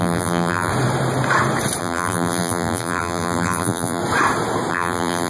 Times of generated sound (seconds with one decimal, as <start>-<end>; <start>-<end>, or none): 0.0-0.7; 1.8-4.0; 4.7-5.3